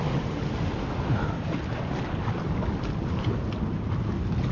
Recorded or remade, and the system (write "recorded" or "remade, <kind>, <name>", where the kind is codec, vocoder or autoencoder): recorded